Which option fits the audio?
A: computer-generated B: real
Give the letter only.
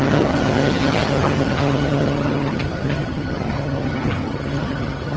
A